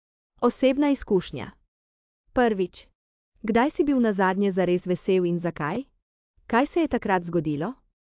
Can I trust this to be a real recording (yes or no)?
no